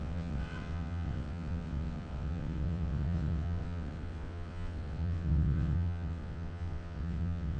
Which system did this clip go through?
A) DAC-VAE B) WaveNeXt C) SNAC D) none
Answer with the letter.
B